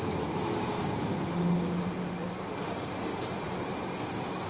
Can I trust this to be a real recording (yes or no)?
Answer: yes